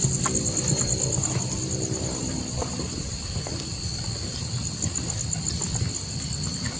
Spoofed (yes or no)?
yes